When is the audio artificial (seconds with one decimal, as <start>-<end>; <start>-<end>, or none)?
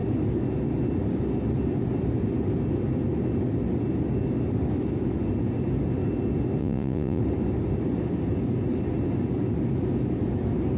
6.6-7.2